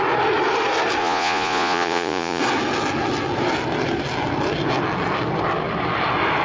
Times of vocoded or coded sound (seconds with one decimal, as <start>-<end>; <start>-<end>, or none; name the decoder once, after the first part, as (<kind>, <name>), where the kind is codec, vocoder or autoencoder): 1.0-2.4 (vocoder, Vocos)